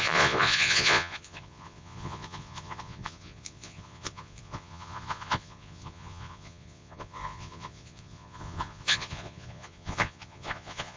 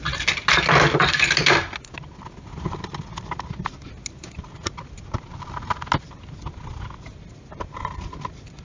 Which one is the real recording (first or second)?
second